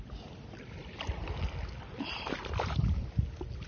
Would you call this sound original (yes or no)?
yes